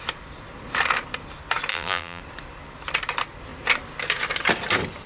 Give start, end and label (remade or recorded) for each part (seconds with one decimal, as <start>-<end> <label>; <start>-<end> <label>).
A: 0.0-1.7 recorded; 1.7-2.2 remade; 2.2-5.1 recorded

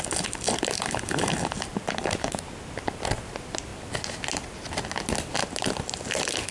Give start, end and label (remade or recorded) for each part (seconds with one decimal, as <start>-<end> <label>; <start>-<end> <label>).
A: 0.0-1.7 recorded; 1.7-2.5 remade; 2.5-6.5 recorded

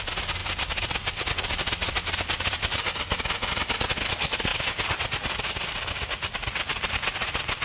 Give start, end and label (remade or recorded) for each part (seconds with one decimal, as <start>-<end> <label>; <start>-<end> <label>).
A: 0.0-0.4 recorded; 0.4-3.0 remade; 3.0-4.5 recorded; 4.5-6.9 remade; 6.9-7.6 recorded

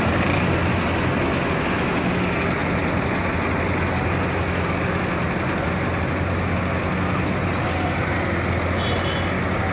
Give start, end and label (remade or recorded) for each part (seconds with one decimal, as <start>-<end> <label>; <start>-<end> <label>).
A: 0.0-9.7 recorded

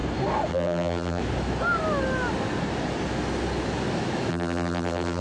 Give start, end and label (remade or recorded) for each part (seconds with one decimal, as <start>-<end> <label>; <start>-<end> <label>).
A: 0.0-0.5 recorded; 0.5-1.2 remade; 1.2-4.3 recorded; 4.3-5.2 remade